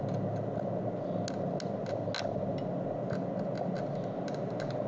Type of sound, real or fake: real